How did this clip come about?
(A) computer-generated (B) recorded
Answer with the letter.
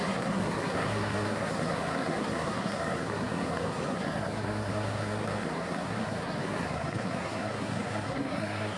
A